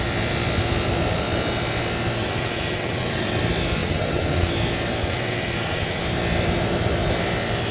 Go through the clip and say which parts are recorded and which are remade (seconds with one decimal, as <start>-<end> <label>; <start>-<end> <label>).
0.0-2.2 recorded; 2.2-3.4 remade; 3.4-3.8 recorded; 3.8-4.5 remade; 4.5-5.0 recorded; 5.0-6.0 remade; 6.0-7.7 recorded